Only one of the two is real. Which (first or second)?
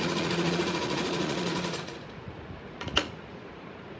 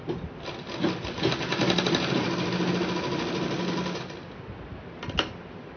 second